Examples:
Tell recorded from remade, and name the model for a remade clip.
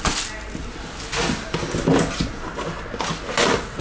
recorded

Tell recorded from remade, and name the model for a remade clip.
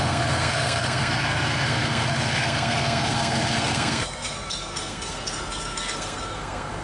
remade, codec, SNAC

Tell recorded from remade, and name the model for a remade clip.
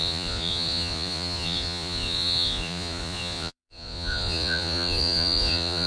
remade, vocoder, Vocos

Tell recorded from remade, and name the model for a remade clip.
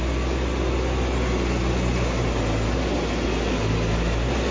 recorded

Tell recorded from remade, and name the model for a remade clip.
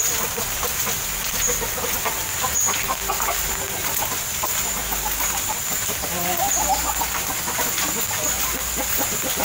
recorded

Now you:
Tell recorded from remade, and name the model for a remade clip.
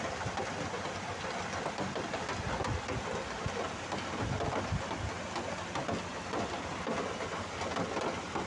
recorded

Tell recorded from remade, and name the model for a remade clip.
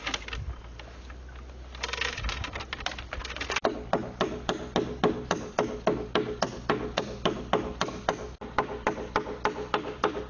recorded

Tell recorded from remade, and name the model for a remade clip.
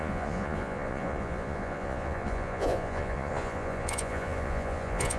remade, vocoder, Vocos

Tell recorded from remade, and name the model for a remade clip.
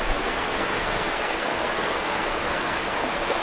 remade, codec, SNAC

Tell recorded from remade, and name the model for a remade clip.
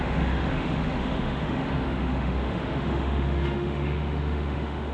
remade, autoencoder, DAC-VAE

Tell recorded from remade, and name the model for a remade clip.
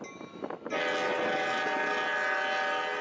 recorded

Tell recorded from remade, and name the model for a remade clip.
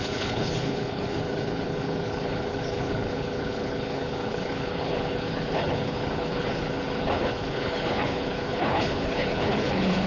remade, codec, HILCodec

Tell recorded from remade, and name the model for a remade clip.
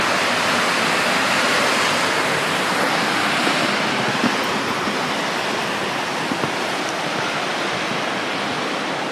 recorded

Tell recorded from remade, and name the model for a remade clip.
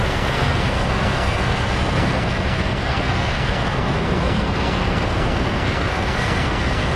remade, codec, SNAC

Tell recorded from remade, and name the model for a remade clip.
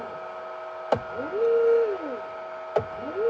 recorded